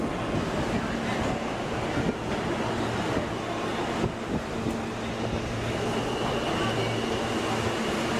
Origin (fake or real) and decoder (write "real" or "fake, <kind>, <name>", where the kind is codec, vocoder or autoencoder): real